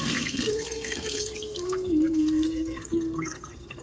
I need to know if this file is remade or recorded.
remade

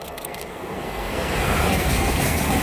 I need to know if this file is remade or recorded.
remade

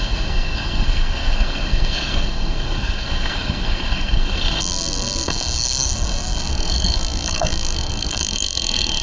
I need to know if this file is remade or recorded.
remade